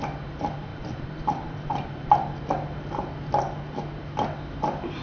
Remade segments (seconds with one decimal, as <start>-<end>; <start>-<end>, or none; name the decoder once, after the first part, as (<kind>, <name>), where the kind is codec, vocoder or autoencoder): 0.7-2.3 (vocoder, BigVGAN v2)